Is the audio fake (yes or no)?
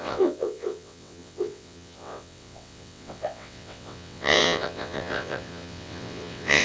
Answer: yes